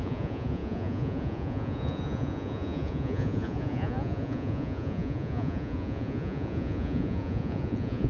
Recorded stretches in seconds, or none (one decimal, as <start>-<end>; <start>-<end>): none